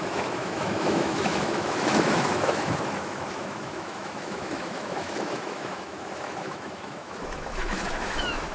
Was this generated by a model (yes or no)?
yes